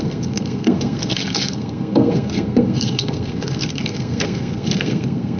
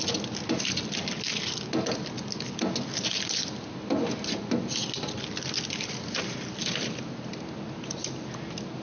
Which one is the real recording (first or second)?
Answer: second